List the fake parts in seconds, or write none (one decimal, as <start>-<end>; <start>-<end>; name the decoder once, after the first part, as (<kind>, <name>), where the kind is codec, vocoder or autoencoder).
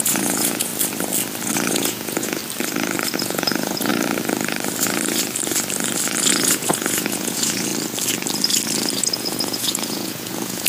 0.0-0.7 (vocoder, Vocos); 1.7-2.4; 3.1-3.9; 6.3-7.7; 9.0-10.7